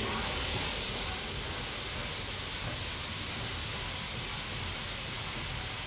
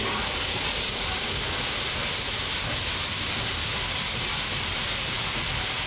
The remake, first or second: second